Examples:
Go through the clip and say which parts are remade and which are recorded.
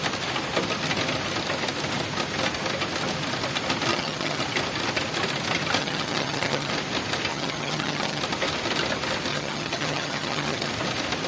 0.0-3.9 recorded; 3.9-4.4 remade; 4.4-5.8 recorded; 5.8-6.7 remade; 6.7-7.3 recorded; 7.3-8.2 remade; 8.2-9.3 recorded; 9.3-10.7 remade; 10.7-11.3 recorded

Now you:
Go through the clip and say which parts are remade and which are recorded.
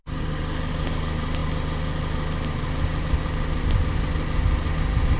0.0-5.2 recorded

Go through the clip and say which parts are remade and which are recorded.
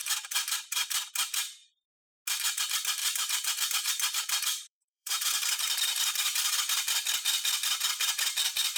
0.0-1.1 remade; 1.1-3.0 recorded; 3.0-6.5 remade; 6.5-8.8 recorded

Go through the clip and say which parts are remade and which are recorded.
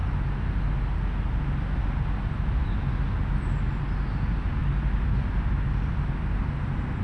0.0-7.0 recorded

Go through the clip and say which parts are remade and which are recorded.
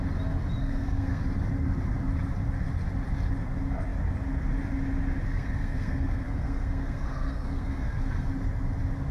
0.0-0.6 recorded; 0.6-1.2 remade; 1.2-5.3 recorded; 5.3-8.3 remade; 8.3-9.1 recorded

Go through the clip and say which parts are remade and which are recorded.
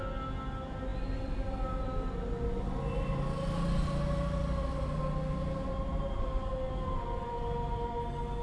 0.0-8.4 recorded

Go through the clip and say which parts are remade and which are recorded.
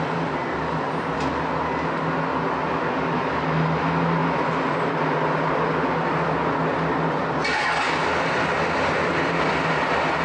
0.0-10.2 recorded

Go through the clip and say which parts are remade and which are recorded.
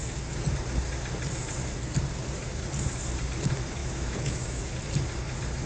0.0-3.8 recorded; 3.8-4.6 remade; 4.6-5.7 recorded